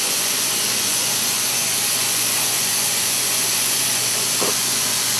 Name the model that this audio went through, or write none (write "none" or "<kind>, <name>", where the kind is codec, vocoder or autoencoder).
vocoder, Vocos